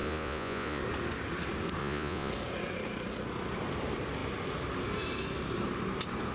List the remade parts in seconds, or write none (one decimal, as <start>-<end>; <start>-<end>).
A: 0.0-0.8; 1.8-2.3